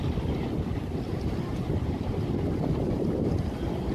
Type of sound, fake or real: real